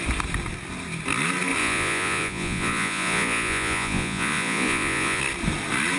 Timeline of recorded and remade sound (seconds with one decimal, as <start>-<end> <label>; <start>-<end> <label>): 0.0-1.6 recorded; 1.6-5.2 remade; 5.2-6.0 recorded